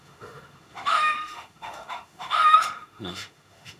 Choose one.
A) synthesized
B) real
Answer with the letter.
A